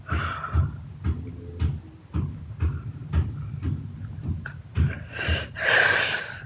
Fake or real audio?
real